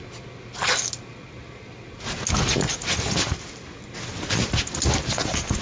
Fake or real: real